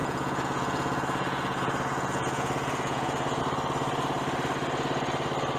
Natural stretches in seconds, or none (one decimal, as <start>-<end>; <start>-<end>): 3.4-5.6